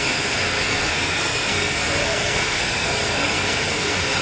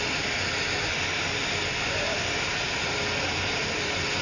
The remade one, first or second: first